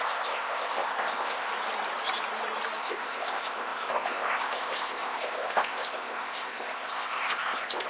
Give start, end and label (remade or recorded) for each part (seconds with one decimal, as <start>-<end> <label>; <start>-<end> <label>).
0.0-1.5 remade; 1.5-2.8 recorded; 2.8-7.9 remade